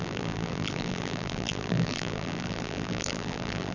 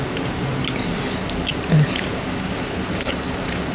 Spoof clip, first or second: first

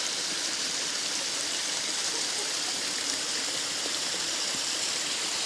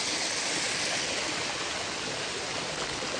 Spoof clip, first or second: first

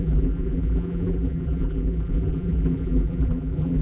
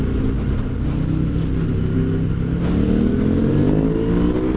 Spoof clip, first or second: first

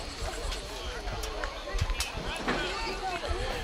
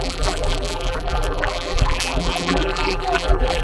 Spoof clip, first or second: second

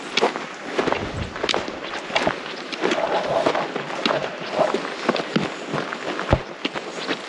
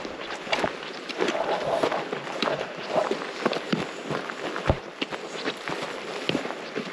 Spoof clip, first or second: second